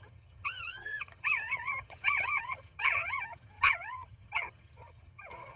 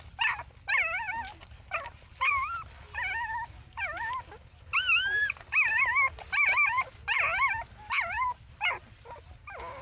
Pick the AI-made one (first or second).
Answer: first